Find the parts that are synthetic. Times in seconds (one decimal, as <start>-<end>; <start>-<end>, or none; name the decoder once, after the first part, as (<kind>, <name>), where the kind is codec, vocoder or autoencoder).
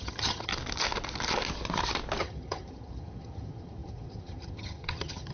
0.0-0.5 (vocoder, HiFi-GAN); 2.2-5.3